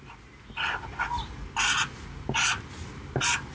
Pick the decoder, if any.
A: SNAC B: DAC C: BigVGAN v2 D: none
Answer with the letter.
D